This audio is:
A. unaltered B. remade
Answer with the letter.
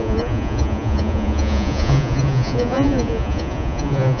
B